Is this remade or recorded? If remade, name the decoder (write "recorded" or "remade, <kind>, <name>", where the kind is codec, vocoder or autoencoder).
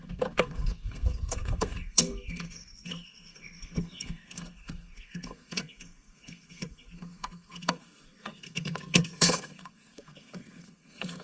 remade, codec, SNAC